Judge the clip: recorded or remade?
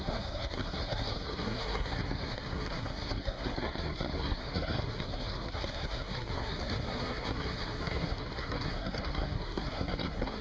remade